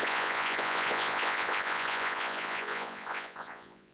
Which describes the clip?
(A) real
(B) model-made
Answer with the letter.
B